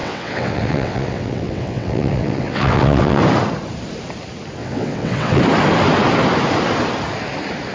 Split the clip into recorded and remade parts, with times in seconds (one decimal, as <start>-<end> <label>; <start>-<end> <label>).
0.0-3.2 remade; 3.2-4.6 recorded; 4.6-5.4 remade; 5.4-7.7 recorded